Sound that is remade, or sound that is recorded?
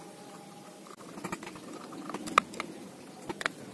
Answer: recorded